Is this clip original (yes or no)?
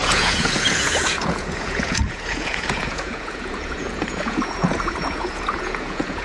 no